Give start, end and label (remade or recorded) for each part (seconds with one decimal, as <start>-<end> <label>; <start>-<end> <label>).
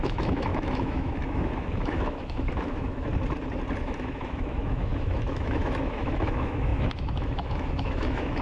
0.0-3.1 remade; 3.1-3.8 recorded; 3.8-8.4 remade